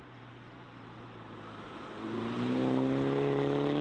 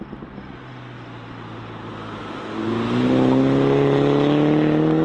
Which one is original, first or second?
second